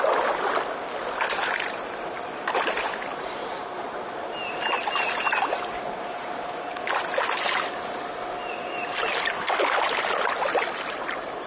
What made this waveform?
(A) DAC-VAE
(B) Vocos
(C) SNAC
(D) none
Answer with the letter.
D